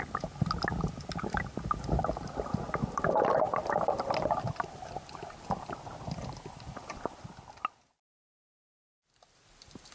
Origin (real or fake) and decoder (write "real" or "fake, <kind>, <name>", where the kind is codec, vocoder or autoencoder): real